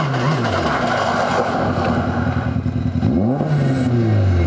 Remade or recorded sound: recorded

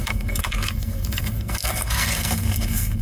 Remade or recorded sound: remade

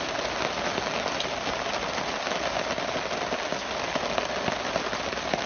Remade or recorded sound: recorded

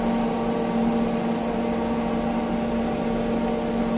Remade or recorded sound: recorded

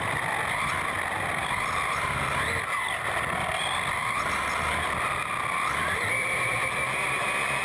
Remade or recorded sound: recorded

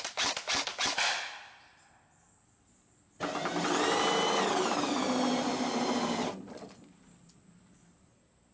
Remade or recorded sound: recorded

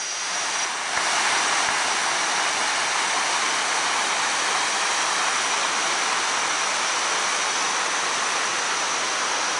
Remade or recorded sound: recorded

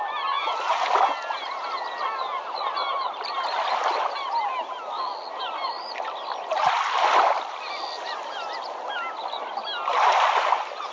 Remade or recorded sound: recorded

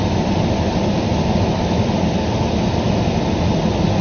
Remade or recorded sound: recorded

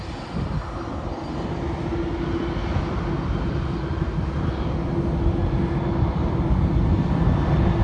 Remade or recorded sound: recorded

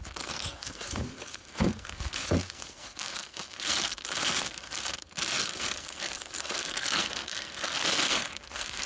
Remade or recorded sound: remade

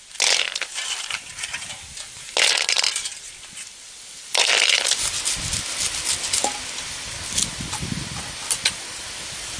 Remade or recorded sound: recorded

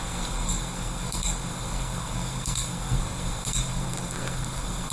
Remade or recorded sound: remade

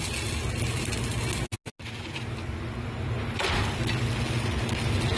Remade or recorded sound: recorded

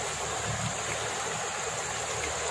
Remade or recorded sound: recorded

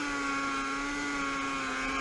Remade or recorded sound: recorded